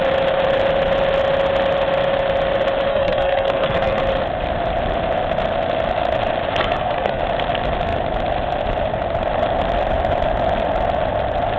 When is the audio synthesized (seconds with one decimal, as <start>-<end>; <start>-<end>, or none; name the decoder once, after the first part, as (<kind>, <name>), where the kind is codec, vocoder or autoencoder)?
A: 2.9-4.0 (codec, SNAC); 6.6-7.2